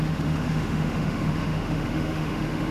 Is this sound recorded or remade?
remade